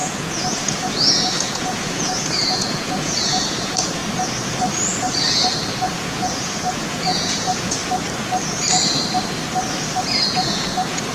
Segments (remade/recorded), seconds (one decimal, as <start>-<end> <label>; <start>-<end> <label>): 0.0-4.0 remade; 4.0-5.8 recorded; 5.8-7.8 remade; 7.8-10.0 recorded; 10.0-11.1 remade